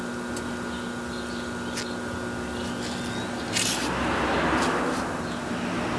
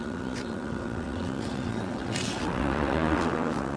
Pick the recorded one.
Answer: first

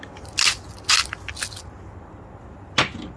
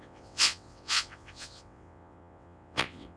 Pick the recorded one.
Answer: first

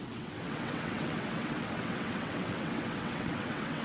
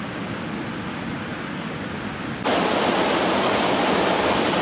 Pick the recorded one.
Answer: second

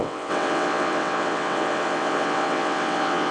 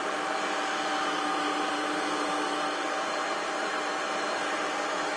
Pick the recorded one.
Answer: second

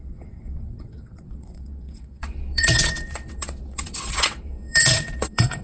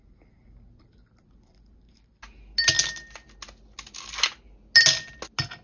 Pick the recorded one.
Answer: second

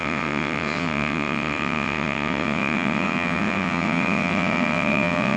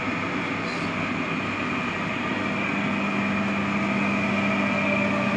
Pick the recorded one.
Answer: second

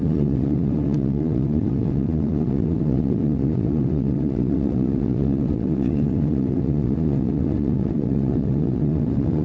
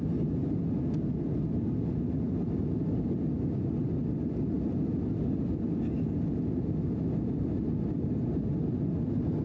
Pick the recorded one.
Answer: second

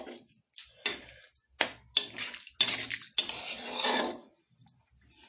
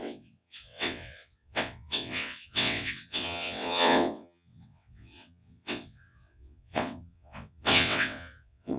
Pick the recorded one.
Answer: first